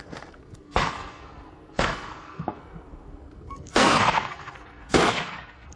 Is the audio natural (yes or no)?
no